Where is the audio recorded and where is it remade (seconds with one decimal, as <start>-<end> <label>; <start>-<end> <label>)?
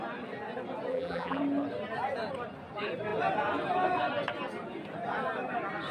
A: 0.0-0.9 recorded; 0.9-1.4 remade; 1.4-5.9 recorded